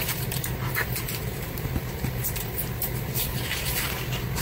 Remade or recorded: remade